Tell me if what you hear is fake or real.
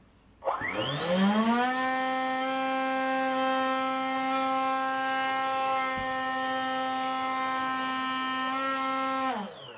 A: real